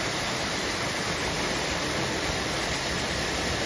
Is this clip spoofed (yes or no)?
no